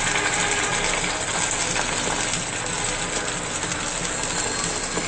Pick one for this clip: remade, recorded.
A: recorded